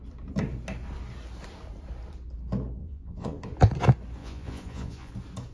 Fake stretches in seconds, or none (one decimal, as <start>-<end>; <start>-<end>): 2.8-3.4; 4.2-5.1

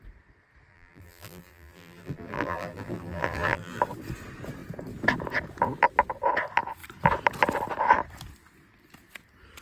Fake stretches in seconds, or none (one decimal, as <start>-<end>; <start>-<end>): 0.7-3.8